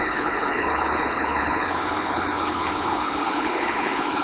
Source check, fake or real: fake